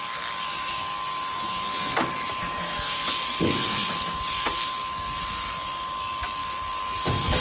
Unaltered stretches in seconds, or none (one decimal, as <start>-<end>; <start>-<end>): 0.0-7.4